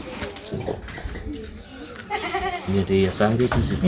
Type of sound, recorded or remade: recorded